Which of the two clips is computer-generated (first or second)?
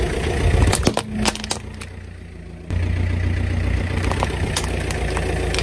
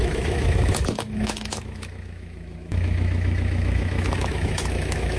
second